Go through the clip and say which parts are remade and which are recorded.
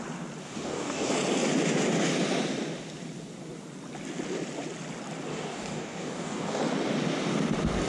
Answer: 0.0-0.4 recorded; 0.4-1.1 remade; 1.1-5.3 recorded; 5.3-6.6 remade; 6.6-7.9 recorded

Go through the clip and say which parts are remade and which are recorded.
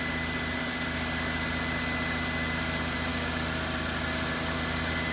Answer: 0.0-5.1 recorded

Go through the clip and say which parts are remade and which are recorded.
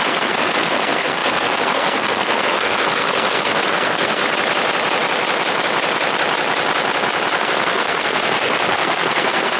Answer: 0.0-4.2 remade; 4.2-7.4 recorded; 7.4-9.6 remade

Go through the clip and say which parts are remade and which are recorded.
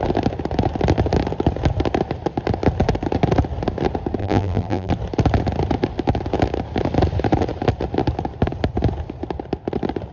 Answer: 0.0-4.2 recorded; 4.2-4.9 remade; 4.9-10.1 recorded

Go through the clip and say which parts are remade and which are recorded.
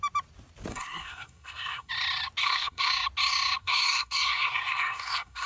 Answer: 0.0-0.7 recorded; 0.7-1.9 remade; 1.9-2.4 recorded; 2.4-2.9 remade; 2.9-3.6 recorded; 3.6-5.5 remade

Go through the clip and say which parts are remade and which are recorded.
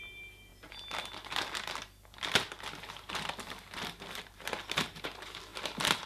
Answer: 0.0-6.1 recorded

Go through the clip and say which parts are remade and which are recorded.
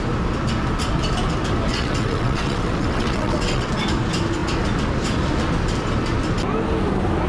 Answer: 0.0-1.7 recorded; 1.7-3.7 remade; 3.7-7.3 recorded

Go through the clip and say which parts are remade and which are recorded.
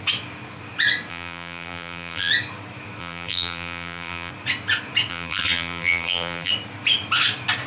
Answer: 0.0-1.1 recorded; 1.1-2.3 remade; 2.3-3.0 recorded; 3.0-4.3 remade; 4.3-5.1 recorded; 5.1-6.5 remade; 6.5-7.7 recorded